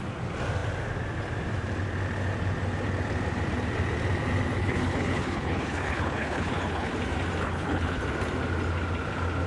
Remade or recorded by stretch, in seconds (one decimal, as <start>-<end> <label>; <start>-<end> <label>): 0.0-4.6 recorded; 4.6-6.9 remade; 6.9-7.4 recorded; 7.4-8.0 remade; 8.0-9.5 recorded